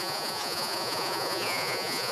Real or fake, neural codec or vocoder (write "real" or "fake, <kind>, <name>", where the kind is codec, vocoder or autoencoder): fake, vocoder, Vocos